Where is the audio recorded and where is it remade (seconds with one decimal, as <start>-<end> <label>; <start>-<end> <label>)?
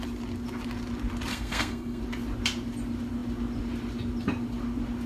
0.0-1.3 recorded; 1.3-2.0 remade; 2.0-5.1 recorded